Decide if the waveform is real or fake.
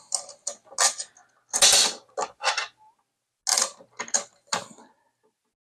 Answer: real